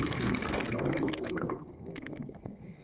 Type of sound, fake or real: fake